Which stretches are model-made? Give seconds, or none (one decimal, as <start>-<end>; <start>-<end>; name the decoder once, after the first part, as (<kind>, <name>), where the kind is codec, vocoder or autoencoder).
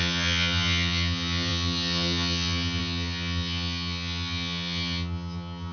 0.0-5.7 (vocoder, HiFi-GAN)